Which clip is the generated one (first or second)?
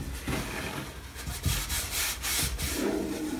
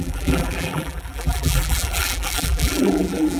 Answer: second